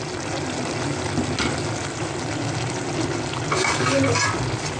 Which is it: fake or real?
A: real